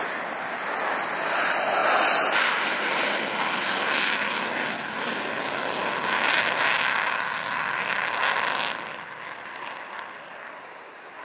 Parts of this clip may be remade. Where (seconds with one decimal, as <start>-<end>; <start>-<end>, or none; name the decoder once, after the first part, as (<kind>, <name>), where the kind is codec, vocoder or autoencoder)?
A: none

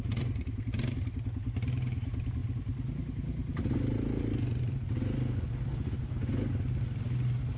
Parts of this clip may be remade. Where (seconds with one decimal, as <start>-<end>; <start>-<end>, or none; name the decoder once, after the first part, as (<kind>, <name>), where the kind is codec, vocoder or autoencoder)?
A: none

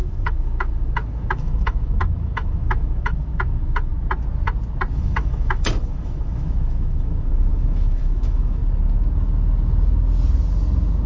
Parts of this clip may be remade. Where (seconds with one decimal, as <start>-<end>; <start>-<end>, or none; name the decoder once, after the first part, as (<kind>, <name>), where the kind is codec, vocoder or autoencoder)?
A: 0.0-3.9 (autoencoder, DAC-VAE); 4.9-8.6

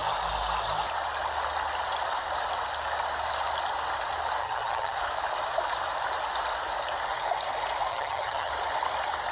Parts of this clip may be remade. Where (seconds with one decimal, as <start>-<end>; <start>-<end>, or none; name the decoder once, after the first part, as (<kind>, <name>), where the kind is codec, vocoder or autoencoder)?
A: 4.4-5.0 (vocoder, HiFi-GAN); 7.9-8.5

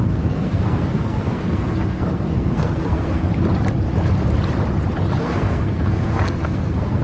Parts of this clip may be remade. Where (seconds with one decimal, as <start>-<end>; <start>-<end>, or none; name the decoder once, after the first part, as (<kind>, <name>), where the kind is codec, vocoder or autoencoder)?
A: 0.0-3.3 (codec, SNAC); 5.2-7.0

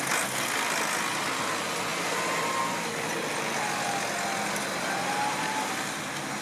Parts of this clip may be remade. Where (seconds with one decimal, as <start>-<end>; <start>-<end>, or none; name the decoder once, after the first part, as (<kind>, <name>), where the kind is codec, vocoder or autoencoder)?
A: none

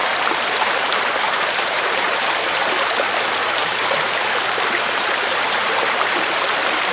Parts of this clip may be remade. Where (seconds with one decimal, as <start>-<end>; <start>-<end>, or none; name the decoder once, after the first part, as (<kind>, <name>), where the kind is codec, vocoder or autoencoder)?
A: 0.0-2.4 (vocoder, BigVGAN v2); 3.4-6.5

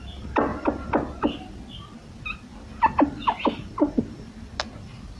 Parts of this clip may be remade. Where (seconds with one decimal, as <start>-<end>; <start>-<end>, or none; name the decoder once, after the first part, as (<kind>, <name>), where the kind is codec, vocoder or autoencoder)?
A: none